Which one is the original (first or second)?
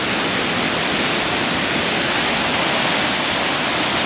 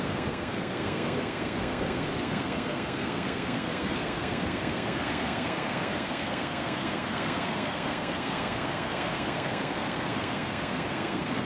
first